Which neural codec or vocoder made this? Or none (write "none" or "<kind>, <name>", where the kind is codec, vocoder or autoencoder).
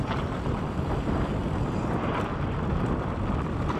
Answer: none